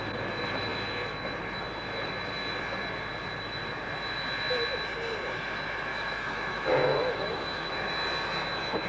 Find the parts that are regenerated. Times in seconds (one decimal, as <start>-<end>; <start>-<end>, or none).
5.9-7.9